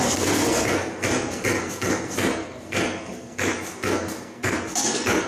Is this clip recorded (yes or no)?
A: no